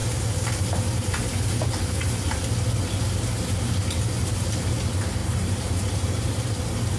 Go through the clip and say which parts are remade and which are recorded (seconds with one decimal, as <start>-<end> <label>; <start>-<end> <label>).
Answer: 0.0-5.2 recorded; 5.2-6.4 remade; 6.4-7.0 recorded